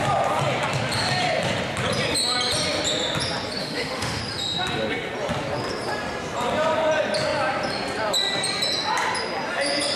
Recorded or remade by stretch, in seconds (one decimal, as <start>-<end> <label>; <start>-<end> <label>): 0.0-3.6 recorded; 3.6-4.2 remade; 4.2-10.0 recorded